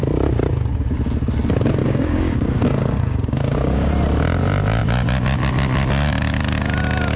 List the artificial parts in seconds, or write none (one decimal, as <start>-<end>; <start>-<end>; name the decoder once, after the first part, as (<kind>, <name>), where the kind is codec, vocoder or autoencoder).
1.8-3.9 (codec, DAC)